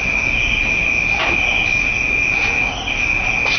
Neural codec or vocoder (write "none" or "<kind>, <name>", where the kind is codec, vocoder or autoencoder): none